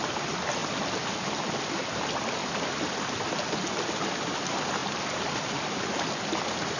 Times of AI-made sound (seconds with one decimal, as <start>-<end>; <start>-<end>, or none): none